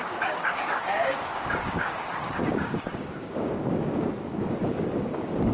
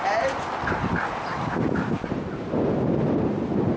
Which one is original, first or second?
second